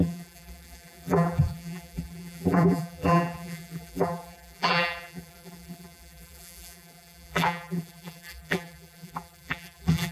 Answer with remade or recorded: remade